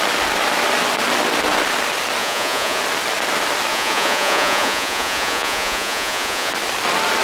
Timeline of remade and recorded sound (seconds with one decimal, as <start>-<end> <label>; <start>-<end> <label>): 0.0-2.2 recorded; 2.2-2.8 remade; 2.8-3.7 recorded; 3.7-6.5 remade; 6.5-7.2 recorded